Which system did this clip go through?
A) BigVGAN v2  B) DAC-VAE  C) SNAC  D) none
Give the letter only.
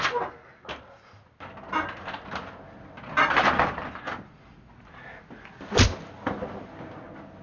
D